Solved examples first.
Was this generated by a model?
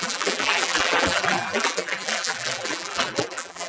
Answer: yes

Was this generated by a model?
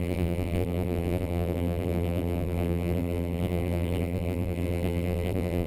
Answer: yes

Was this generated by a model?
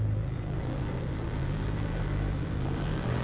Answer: yes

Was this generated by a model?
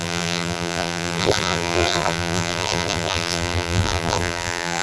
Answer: yes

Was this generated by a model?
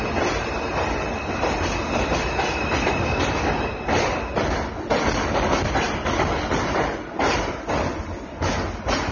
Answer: no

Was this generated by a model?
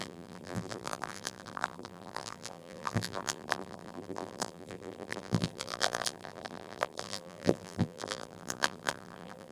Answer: yes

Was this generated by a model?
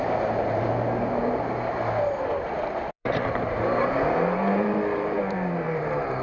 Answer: yes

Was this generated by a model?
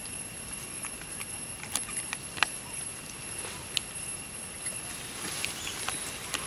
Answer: yes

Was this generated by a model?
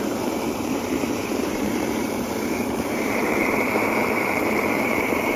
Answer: yes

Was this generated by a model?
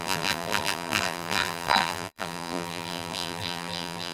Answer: yes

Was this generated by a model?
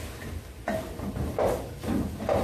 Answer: no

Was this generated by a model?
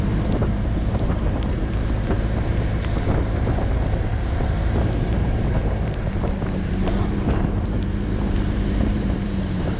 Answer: yes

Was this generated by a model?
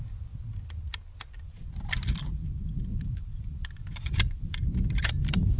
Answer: yes